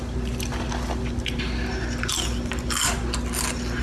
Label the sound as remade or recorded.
recorded